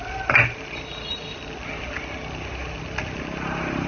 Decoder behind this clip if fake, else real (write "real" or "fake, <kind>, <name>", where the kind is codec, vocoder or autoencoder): real